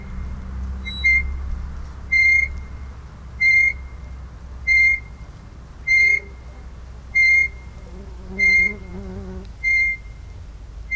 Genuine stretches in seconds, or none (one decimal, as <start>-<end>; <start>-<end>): 0.0-11.0